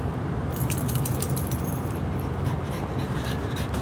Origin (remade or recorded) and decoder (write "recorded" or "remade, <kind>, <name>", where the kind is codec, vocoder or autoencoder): remade, vocoder, BigVGAN v2